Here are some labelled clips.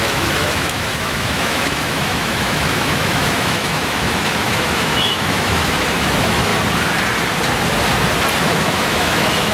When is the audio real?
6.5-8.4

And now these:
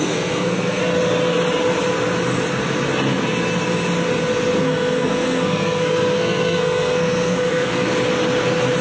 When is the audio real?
0.8-4.6; 7.9-8.8

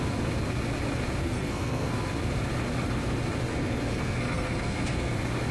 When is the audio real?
0.0-1.2; 1.9-3.5; 5.1-5.5

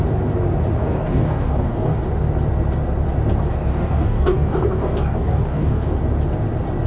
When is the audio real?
0.0-0.8; 2.0-3.7; 5.9-6.9

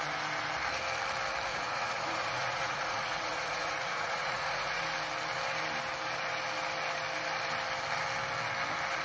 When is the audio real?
0.0-1.5; 4.8-9.0

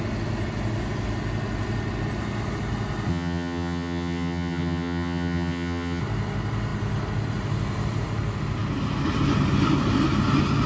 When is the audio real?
0.0-3.1; 6.0-10.7